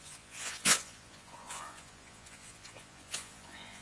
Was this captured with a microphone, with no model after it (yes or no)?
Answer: no